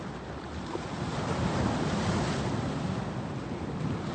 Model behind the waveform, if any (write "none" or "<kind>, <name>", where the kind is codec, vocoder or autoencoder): none